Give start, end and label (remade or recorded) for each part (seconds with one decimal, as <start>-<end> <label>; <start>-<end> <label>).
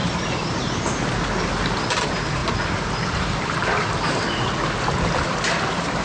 0.0-6.0 recorded